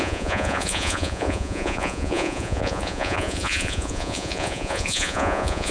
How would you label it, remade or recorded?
remade